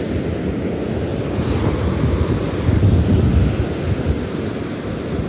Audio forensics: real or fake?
real